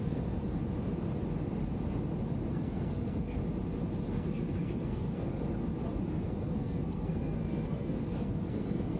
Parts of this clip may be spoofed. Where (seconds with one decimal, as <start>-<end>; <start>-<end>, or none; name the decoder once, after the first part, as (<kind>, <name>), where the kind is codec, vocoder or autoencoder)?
0.0-0.6 (codec, SNAC); 2.5-3.4; 4.1-5.3; 6.0-9.0

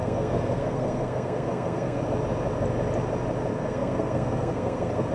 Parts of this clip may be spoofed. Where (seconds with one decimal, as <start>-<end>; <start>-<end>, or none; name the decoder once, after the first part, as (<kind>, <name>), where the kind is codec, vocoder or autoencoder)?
0.0-2.0 (codec, SNAC); 3.5-5.1

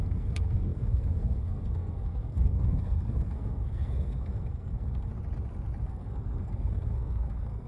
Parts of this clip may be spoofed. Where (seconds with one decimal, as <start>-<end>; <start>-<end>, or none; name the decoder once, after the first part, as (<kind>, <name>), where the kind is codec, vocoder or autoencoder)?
0.0-5.1 (codec, SNAC); 5.8-7.7

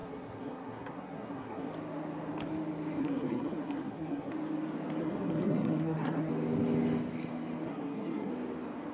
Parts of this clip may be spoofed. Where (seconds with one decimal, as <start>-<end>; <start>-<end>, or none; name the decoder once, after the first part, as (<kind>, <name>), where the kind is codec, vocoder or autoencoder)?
0.0-1.7 (codec, SNAC); 3.0-4.3; 5.0-6.3; 7.7-8.3

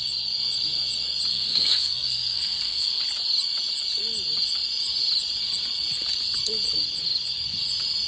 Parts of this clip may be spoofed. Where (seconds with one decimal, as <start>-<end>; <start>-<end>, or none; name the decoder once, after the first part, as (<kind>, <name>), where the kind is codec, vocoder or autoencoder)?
1.3-3.0 (codec, SNAC)

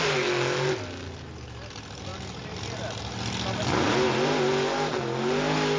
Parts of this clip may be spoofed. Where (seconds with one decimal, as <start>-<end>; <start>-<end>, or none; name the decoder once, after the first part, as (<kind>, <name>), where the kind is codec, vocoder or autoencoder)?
none